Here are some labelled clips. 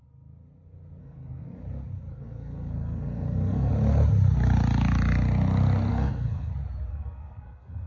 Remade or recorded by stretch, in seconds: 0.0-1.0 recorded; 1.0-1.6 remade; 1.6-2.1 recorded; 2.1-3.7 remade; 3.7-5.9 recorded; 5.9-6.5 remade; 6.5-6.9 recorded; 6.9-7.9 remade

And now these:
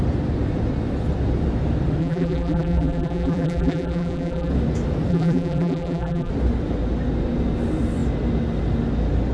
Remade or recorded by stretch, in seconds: 0.0-2.0 recorded; 2.0-4.5 remade; 4.5-5.1 recorded; 5.1-6.3 remade; 6.3-9.3 recorded

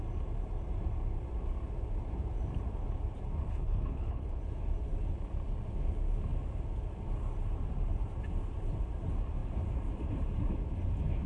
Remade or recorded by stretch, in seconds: 0.0-3.5 recorded; 3.5-4.4 remade; 4.4-11.3 recorded

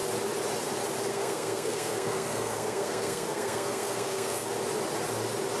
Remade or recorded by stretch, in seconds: 0.0-1.1 recorded; 1.1-4.5 remade; 4.5-5.6 recorded

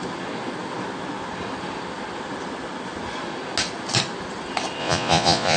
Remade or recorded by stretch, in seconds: 0.0-4.8 recorded; 4.8-5.6 remade